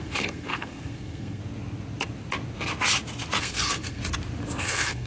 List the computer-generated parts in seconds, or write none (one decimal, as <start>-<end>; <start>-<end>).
0.0-1.4; 3.4-4.0; 4.6-5.1